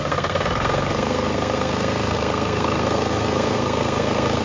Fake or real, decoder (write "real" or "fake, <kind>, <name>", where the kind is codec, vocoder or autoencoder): fake, codec, SNAC